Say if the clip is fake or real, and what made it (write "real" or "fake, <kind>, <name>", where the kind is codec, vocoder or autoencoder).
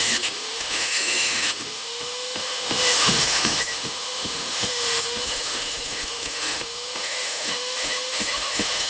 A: fake, autoencoder, DAC-VAE